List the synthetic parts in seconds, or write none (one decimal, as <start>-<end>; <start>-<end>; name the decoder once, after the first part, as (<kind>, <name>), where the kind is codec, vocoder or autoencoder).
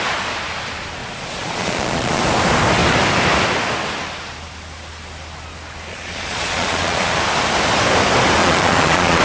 1.0-2.2 (vocoder, Vocos); 5.9-7.2; 8.4-9.2